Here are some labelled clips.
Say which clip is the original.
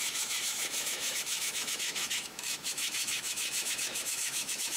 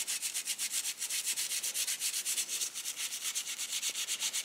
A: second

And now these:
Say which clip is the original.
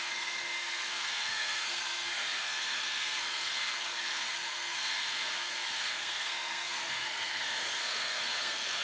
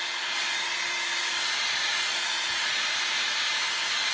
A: second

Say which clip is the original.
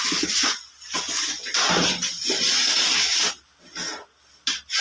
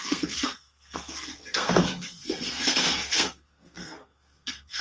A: first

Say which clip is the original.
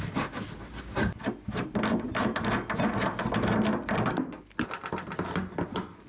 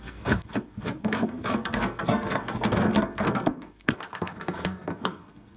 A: first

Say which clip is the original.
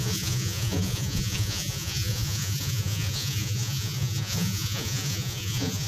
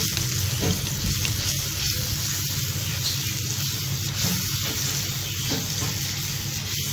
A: second